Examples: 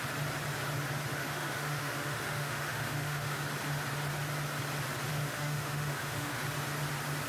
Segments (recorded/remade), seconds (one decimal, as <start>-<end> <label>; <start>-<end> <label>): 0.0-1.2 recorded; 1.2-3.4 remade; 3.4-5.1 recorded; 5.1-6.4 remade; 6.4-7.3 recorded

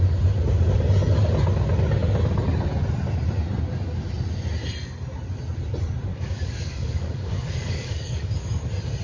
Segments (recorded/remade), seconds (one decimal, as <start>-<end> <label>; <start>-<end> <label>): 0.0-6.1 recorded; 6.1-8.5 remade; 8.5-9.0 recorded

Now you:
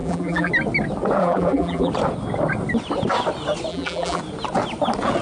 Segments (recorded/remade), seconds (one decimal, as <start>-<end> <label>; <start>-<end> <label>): 0.0-0.5 remade; 0.5-1.2 recorded; 1.2-1.9 remade; 1.9-3.7 recorded; 3.7-4.2 remade; 4.2-5.2 recorded

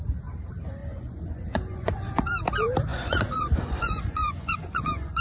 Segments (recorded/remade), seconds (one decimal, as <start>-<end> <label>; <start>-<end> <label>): 0.0-0.8 recorded; 0.8-2.3 remade; 2.3-2.9 recorded; 2.9-5.2 remade

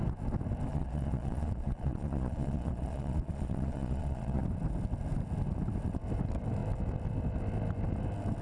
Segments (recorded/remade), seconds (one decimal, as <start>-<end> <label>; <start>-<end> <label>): 0.0-0.7 recorded; 0.7-4.4 remade; 4.4-8.4 recorded